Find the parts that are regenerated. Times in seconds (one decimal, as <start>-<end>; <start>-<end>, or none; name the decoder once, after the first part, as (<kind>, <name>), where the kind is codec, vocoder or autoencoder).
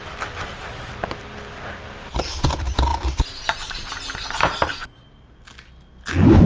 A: 2.9-3.9 (vocoder, BigVGAN v2)